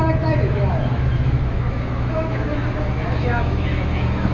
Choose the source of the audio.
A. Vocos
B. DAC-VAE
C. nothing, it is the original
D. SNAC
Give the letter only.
B